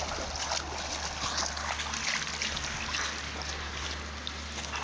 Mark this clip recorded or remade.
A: recorded